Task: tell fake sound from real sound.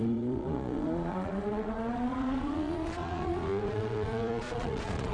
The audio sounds fake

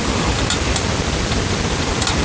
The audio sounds real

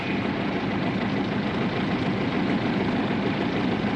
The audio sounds real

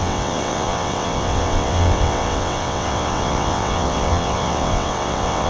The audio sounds fake